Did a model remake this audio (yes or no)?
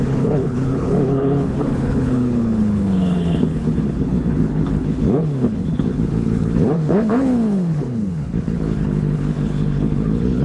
yes